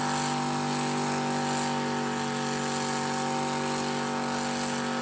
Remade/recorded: recorded